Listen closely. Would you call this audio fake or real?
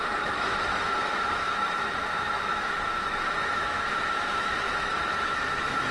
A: fake